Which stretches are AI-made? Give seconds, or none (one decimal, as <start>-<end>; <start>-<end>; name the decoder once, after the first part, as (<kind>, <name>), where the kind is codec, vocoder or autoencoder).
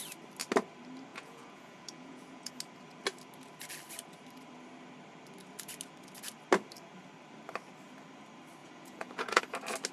1.1-2.5 (vocoder, Vocos); 8.6-9.4